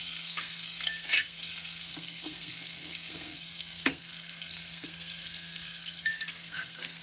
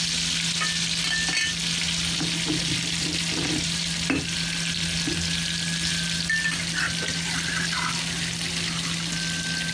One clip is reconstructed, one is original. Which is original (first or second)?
second